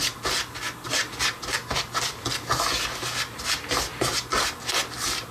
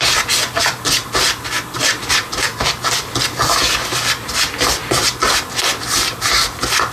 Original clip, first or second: first